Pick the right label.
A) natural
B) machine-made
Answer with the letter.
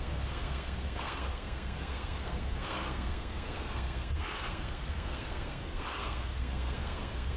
B